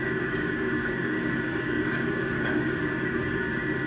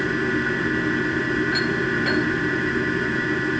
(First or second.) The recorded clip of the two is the second